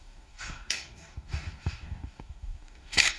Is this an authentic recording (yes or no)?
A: no